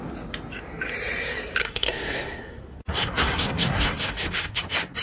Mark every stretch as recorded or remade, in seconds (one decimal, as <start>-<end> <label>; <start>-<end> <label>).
0.0-1.6 recorded; 1.6-4.6 remade; 4.6-5.0 recorded